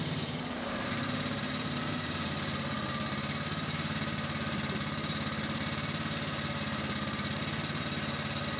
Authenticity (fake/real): fake